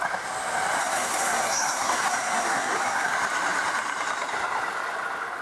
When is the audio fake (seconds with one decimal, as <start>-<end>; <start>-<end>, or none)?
0.8-3.1